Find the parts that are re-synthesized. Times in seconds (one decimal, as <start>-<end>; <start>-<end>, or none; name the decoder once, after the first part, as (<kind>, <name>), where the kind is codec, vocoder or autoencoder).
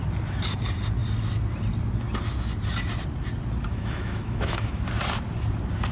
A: 3.7-4.8 (autoencoder, DAC-VAE)